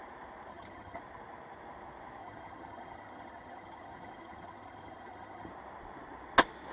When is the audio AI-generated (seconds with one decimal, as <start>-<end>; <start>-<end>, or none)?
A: 0.5-1.0; 2.2-5.5